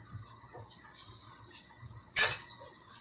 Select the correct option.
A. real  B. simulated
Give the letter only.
B